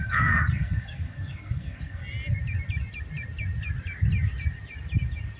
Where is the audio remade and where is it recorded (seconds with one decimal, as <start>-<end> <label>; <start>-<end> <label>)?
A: 0.0-2.0 remade; 2.0-5.4 recorded